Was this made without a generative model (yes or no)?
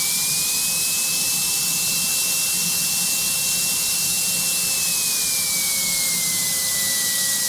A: yes